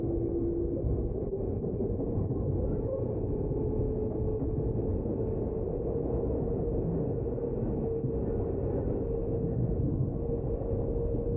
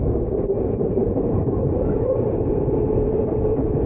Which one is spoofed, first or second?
second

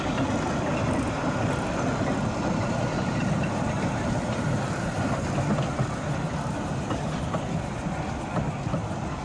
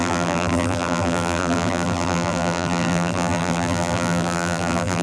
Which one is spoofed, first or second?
second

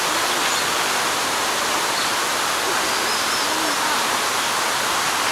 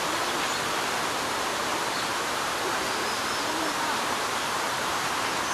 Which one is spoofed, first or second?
second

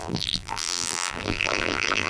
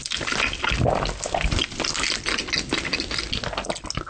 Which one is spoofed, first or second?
first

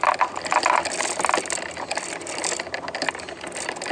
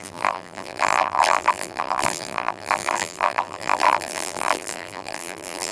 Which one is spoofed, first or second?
second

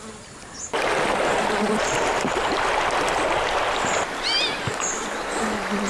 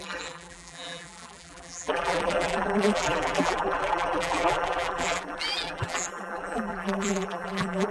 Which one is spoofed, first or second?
second